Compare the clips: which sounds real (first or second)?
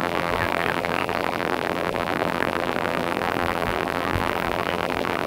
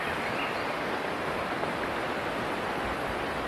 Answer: second